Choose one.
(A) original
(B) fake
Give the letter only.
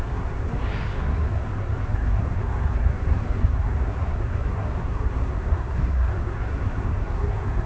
B